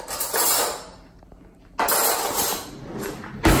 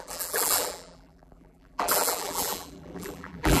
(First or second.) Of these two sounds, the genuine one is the first